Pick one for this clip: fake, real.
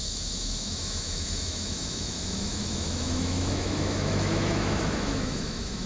fake